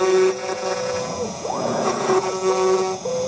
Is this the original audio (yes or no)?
no